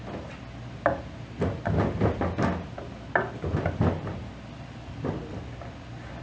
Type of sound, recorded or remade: recorded